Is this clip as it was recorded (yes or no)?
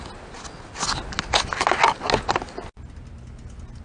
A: yes